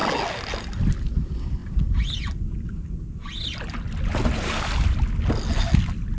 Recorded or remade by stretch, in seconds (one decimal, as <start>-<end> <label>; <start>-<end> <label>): 0.0-6.2 recorded